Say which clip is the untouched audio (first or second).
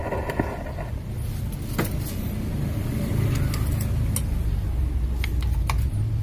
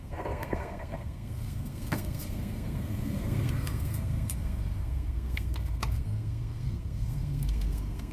first